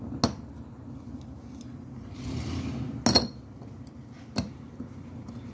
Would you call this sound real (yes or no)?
yes